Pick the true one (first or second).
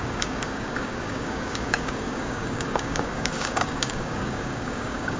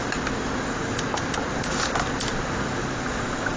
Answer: second